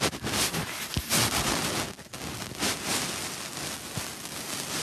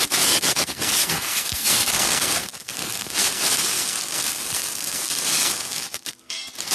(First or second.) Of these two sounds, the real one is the first